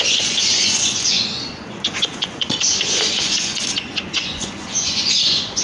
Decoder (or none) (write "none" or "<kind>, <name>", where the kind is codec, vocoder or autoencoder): vocoder, Vocos